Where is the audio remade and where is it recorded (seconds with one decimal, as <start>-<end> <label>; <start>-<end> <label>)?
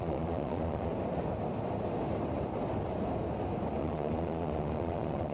0.0-0.9 remade; 0.9-3.8 recorded; 3.8-5.3 remade